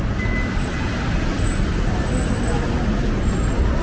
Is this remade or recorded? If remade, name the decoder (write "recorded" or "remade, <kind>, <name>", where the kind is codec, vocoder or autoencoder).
recorded